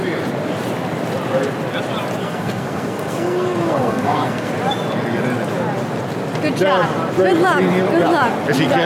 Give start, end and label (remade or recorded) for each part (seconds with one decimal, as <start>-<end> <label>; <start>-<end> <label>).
0.0-2.2 recorded; 2.2-4.5 remade; 4.5-8.8 recorded